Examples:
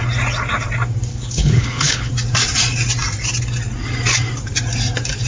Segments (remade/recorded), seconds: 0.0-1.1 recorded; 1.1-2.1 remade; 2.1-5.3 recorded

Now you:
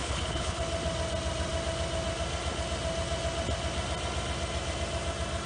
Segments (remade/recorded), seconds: 0.0-0.6 remade; 0.6-5.5 recorded

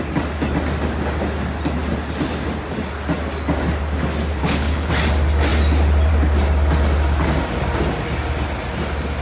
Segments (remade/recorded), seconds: 0.0-4.4 recorded; 4.4-4.9 remade; 4.9-9.2 recorded